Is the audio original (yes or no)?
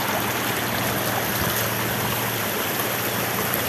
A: yes